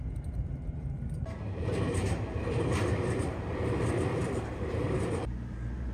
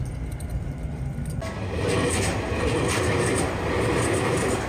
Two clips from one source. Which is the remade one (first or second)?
first